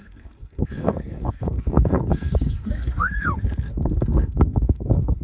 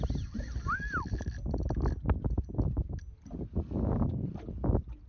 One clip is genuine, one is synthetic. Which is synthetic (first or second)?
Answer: first